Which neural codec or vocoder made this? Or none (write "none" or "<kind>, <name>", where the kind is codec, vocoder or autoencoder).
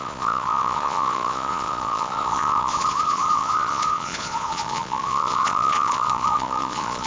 vocoder, Vocos